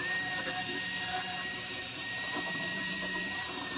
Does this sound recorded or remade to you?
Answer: remade